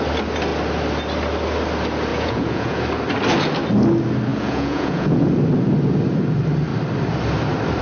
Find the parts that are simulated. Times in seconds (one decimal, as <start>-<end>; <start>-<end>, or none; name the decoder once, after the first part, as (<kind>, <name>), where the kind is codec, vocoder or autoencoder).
2.1-2.8 (vocoder, Vocos); 4.3-5.3

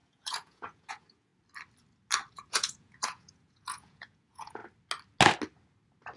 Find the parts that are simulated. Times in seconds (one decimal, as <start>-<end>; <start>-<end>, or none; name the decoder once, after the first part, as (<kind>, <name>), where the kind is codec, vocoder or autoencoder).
0.0-1.3 (vocoder, Vocos); 2.3-4.6

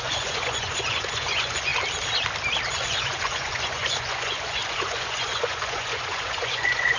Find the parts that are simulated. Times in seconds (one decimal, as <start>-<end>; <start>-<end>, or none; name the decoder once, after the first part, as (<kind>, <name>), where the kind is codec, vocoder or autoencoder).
0.0-1.7 (vocoder, Vocos); 2.7-7.0

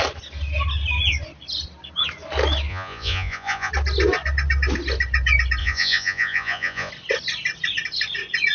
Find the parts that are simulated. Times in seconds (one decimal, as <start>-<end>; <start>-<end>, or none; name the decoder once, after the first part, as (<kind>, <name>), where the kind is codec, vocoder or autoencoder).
2.7-3.7 (vocoder, Vocos); 5.6-6.9

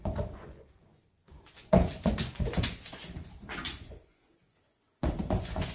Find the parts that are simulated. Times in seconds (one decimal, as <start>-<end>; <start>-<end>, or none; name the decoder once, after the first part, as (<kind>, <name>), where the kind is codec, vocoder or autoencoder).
0.0-5.7 (vocoder, Vocos)

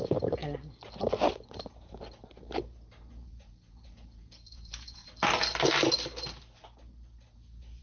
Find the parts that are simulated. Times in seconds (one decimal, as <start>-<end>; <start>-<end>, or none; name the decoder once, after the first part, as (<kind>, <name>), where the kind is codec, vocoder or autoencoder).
0.0-0.4 (vocoder, Vocos); 3.1-5.0

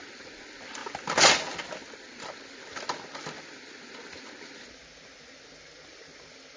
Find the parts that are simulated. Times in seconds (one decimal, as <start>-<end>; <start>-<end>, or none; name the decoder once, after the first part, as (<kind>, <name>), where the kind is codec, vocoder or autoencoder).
none

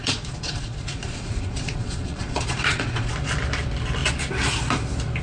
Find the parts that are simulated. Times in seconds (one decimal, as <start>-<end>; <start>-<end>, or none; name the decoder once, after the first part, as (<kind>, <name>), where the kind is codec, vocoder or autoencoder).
0.0-3.1 (vocoder, Vocos)